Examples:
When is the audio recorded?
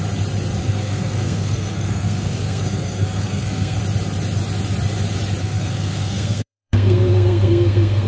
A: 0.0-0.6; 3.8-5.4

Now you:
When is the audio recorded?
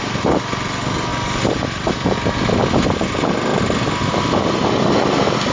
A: 0.0-5.5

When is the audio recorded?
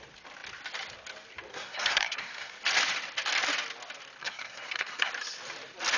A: 0.0-1.5; 2.5-4.2; 5.1-6.0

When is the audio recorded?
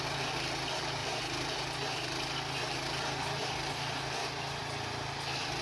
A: 0.0-5.6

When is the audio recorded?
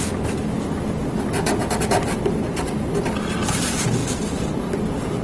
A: 0.0-5.2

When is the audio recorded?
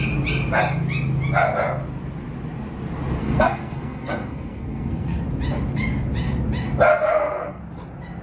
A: 0.0-3.2; 5.2-6.9; 7.6-8.2